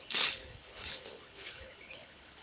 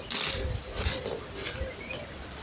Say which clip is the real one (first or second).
second